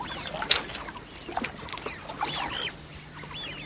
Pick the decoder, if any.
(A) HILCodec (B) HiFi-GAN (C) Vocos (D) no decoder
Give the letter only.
D